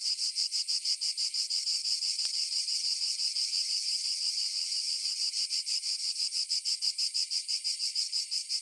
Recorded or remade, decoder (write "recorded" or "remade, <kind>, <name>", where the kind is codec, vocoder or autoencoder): remade, vocoder, BigVGAN v2